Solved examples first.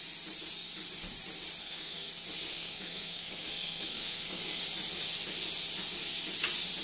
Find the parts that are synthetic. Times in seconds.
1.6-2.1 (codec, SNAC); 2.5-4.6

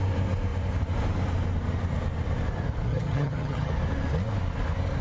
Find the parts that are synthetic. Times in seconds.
2.9-3.7 (vocoder, HiFi-GAN)

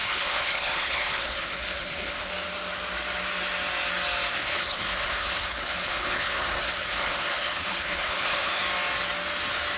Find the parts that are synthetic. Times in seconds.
0.0-2.3 (codec, HILCodec); 4.3-8.6

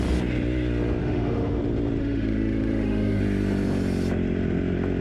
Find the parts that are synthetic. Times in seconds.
1.0-1.6 (autoencoder, DAC-VAE); 2.0-3.2